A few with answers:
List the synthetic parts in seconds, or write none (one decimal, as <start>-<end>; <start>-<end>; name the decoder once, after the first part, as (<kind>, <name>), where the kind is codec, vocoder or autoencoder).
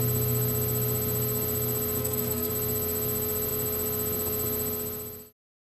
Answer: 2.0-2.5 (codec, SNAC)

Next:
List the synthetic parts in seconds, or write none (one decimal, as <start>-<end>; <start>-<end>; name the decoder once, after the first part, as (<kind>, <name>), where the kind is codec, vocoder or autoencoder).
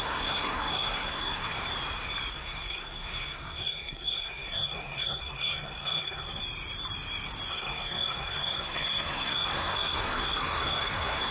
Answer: 0.0-1.5 (codec, SNAC); 2.3-6.4; 7.5-11.3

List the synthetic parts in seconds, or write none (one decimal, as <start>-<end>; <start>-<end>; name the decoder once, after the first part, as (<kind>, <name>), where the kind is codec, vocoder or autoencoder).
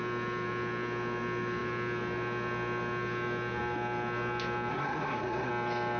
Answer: 4.7-5.5 (codec, SNAC)